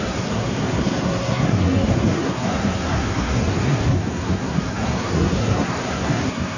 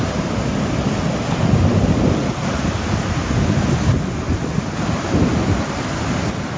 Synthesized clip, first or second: first